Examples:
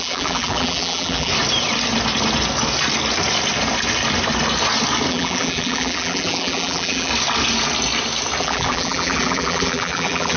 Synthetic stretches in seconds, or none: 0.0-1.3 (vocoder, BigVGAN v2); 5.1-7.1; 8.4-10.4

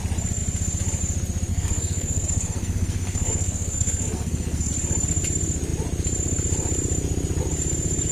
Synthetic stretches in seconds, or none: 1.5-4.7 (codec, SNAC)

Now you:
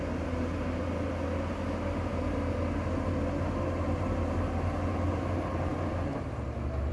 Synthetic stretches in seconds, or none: none